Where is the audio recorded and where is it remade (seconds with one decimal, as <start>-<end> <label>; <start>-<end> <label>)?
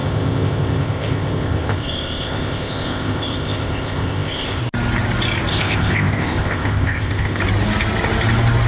0.0-4.6 remade; 4.6-5.5 recorded; 5.5-7.4 remade; 7.4-8.7 recorded